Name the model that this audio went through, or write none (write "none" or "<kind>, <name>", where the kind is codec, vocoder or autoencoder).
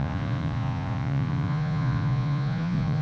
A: vocoder, Vocos